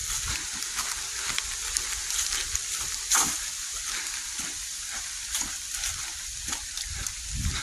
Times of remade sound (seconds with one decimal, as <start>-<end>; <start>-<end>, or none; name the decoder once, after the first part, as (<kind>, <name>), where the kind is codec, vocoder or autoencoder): 0.0-0.9 (vocoder, BigVGAN v2); 2.0-2.5; 3.7-7.1